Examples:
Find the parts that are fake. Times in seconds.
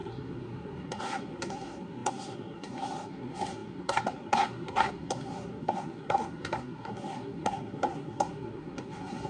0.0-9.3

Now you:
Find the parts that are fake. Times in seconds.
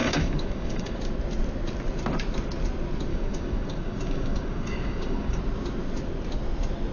0.0-1.0; 3.1-5.4